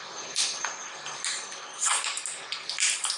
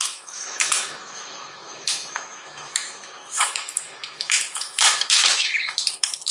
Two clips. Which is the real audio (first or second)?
first